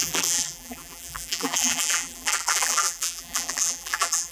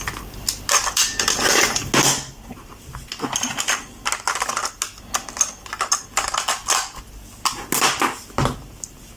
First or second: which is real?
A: second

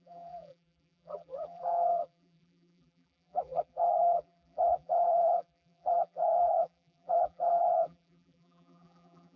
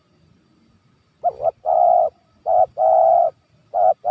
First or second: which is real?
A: second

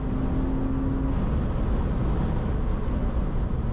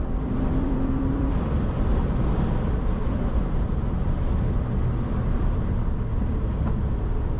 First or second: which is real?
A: first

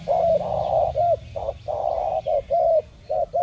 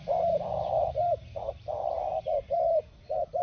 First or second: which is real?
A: first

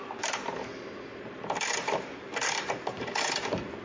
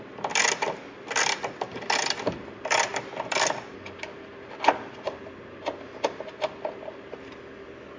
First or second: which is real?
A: second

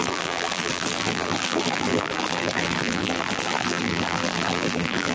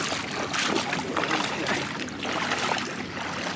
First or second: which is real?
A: second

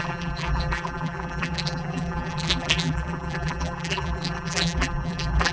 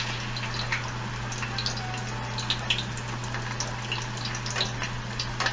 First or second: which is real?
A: second